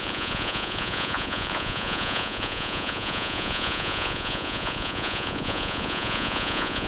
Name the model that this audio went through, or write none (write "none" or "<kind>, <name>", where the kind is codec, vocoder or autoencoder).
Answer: vocoder, Vocos